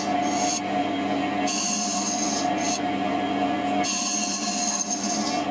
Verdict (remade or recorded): recorded